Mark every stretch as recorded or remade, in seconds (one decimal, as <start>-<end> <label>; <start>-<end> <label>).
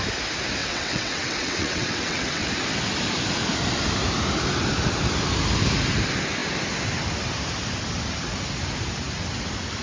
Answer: 0.0-0.6 recorded; 0.6-2.5 remade; 2.5-9.8 recorded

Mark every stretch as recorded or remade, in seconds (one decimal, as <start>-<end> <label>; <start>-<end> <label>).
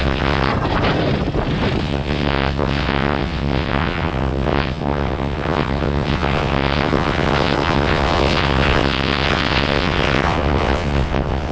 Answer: 0.0-0.5 remade; 0.5-1.8 recorded; 1.8-11.5 remade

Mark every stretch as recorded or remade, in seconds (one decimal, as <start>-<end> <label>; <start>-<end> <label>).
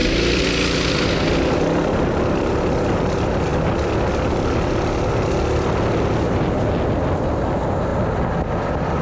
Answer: 0.0-9.0 recorded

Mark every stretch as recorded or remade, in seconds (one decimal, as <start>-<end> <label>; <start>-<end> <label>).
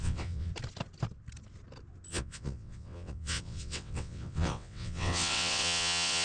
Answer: 0.0-0.5 remade; 0.5-2.1 recorded; 2.1-6.2 remade